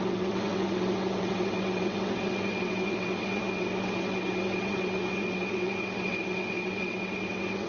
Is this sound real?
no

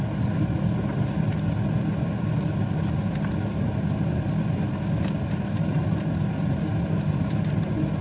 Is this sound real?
yes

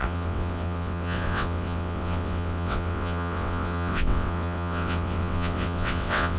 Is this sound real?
no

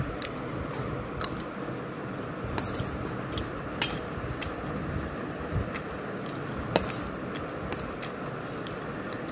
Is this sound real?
yes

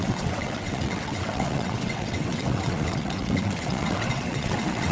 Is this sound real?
no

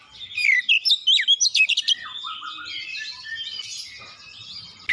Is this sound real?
yes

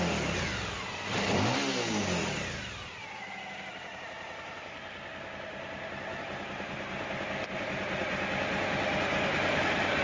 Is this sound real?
yes